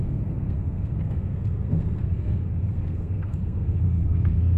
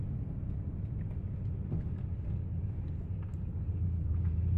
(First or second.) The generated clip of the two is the first